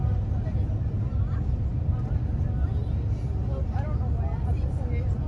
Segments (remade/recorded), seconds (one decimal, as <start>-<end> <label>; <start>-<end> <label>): 0.0-5.3 recorded